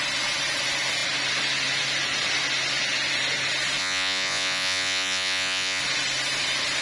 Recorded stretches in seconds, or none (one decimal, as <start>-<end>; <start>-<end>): 0.0-3.8; 5.8-6.8